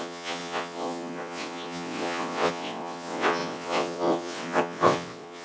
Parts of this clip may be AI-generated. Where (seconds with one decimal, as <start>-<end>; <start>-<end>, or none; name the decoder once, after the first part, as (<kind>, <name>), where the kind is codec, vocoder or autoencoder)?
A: 0.0-5.4 (vocoder, WaveNeXt)

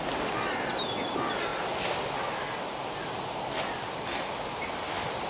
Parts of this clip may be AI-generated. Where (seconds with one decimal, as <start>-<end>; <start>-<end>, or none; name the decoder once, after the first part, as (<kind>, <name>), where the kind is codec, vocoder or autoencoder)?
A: none